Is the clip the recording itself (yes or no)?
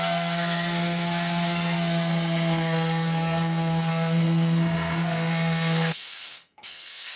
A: no